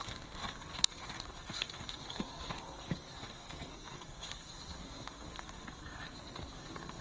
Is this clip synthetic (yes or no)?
yes